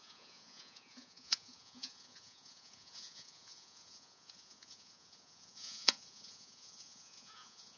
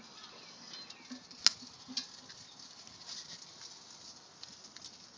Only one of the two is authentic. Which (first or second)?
second